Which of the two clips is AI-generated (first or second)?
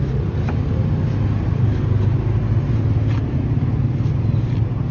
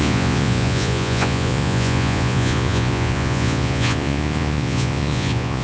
second